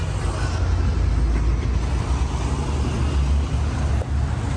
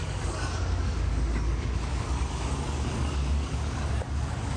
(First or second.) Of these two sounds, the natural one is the first